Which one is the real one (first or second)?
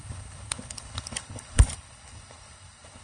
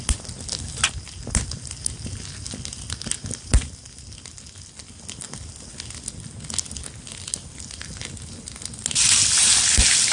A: second